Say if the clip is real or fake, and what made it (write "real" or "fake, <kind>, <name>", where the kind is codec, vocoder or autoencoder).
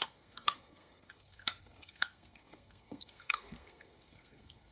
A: fake, codec, SNAC